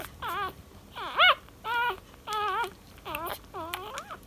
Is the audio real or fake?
real